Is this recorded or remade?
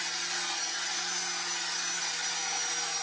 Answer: recorded